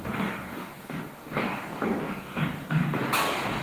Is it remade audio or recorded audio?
remade